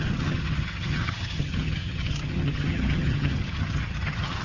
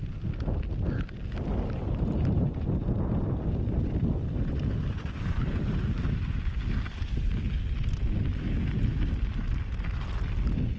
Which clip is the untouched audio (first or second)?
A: second